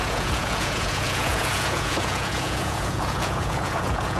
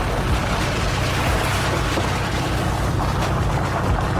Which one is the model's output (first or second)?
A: first